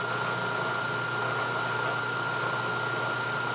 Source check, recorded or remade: recorded